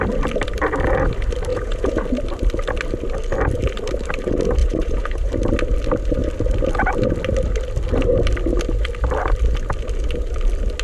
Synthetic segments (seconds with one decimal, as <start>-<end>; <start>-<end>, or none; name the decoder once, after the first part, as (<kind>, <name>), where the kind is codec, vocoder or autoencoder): 1.5-2.0 (vocoder, Vocos); 4.6-5.3